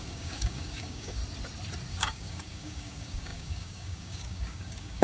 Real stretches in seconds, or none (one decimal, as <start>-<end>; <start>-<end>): 1.2-1.9